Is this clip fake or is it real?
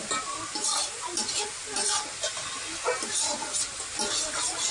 real